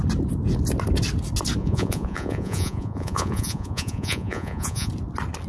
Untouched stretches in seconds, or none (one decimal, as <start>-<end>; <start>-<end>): 0.0-1.6; 4.9-5.5